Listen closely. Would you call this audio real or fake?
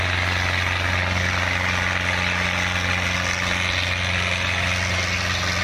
real